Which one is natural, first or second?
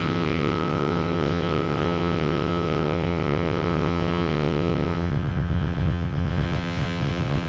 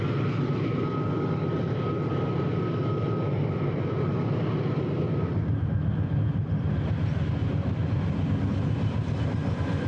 second